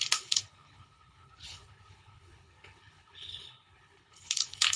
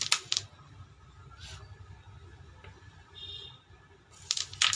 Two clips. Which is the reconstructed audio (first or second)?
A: first